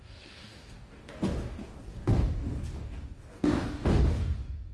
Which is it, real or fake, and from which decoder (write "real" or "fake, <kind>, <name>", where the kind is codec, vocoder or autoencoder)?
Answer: fake, codec, DAC